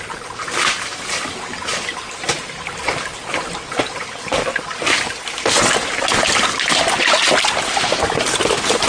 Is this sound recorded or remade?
recorded